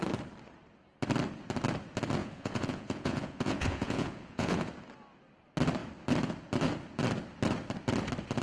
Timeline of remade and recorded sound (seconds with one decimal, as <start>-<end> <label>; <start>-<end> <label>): 0.0-2.2 recorded; 2.2-4.7 remade; 4.7-8.4 recorded